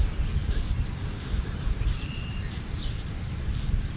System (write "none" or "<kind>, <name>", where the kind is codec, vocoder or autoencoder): vocoder, BigVGAN v2